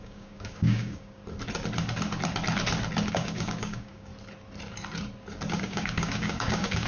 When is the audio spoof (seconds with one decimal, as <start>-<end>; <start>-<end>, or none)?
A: 0.0-1.2; 3.1-4.1; 5.5-6.9